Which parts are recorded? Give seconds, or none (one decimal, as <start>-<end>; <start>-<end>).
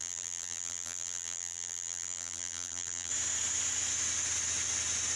3.1-5.2